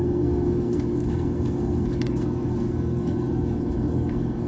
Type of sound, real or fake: fake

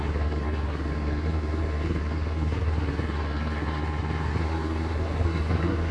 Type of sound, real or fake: fake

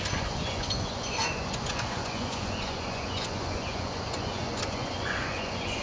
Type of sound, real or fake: fake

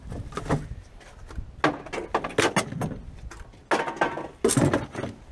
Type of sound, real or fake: real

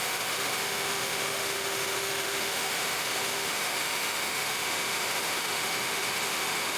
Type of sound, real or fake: fake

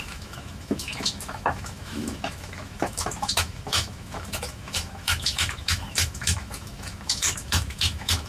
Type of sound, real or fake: fake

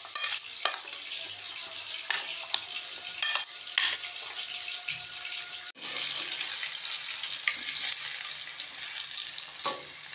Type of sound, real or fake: real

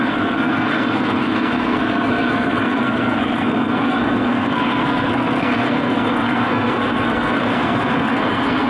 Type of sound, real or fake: fake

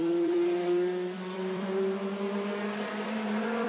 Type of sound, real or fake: fake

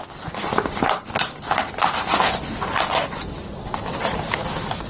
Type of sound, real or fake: real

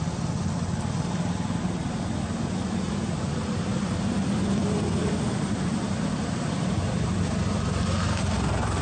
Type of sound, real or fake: real